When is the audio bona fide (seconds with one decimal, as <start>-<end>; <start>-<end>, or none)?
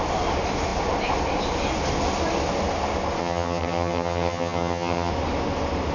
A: 0.0-3.2; 5.1-5.9